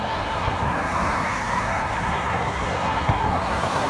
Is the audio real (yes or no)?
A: no